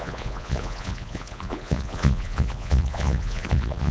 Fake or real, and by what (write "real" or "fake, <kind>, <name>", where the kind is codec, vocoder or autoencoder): fake, vocoder, Vocos